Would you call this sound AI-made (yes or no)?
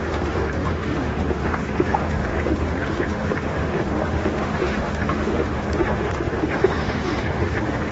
yes